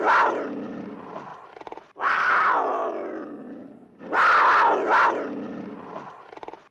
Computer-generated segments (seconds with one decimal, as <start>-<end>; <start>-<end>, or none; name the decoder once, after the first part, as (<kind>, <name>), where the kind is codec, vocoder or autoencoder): none